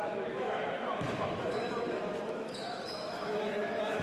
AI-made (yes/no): yes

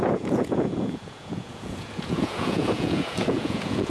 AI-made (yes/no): yes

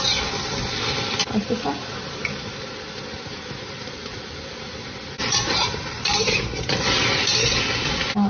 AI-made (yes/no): no